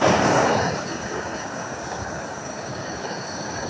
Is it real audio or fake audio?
fake